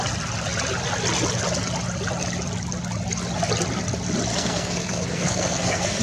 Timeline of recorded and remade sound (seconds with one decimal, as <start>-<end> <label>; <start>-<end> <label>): 0.0-4.3 recorded; 4.3-6.0 remade